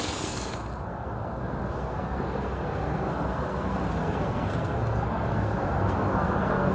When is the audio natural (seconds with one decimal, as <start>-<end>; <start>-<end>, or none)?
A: none